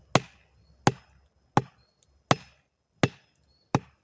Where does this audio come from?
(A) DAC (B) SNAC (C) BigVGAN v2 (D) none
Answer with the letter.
D